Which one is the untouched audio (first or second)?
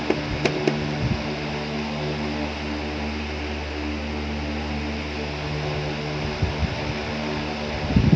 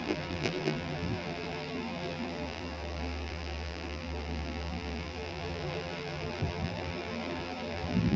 first